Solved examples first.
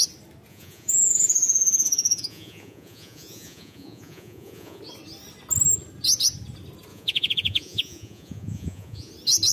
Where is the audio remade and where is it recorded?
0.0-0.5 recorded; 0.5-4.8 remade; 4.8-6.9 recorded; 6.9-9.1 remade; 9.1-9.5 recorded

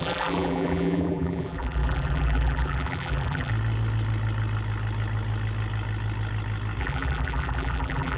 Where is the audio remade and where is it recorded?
0.0-3.5 remade; 3.5-6.8 recorded; 6.8-8.2 remade

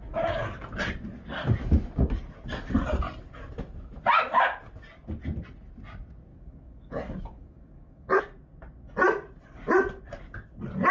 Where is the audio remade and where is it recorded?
0.0-6.3 recorded; 6.3-8.2 remade; 8.2-10.9 recorded

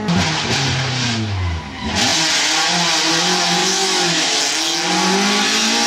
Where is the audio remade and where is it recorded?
0.0-3.6 recorded; 3.6-4.4 remade; 4.4-5.9 recorded

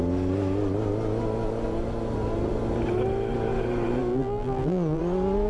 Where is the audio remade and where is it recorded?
0.0-4.1 recorded; 4.1-5.0 remade; 5.0-5.5 recorded

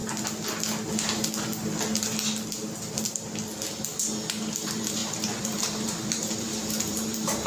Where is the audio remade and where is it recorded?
0.0-4.5 recorded; 4.5-7.5 remade

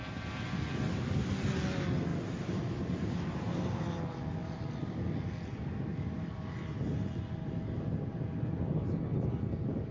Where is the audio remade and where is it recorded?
0.0-2.1 recorded; 2.1-4.0 remade; 4.0-9.9 recorded

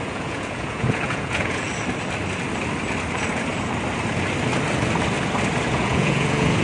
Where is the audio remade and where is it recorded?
0.0-1.7 remade; 1.7-5.7 recorded; 5.7-6.6 remade